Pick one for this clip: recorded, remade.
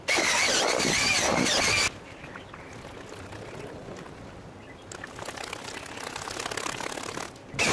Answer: recorded